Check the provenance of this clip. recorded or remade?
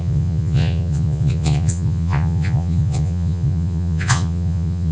remade